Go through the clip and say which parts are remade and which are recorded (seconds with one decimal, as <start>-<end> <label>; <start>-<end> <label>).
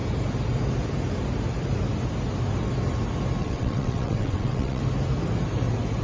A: 0.0-3.4 recorded; 3.4-4.8 remade; 4.8-6.0 recorded